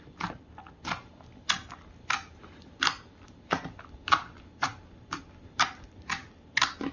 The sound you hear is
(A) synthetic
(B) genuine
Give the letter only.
B